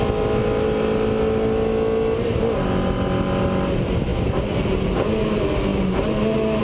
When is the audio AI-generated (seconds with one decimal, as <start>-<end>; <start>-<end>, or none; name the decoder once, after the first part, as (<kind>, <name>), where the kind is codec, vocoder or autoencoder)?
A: none